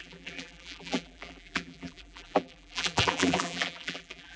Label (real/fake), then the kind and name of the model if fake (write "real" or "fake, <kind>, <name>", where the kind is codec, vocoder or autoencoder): fake, vocoder, BigVGAN v2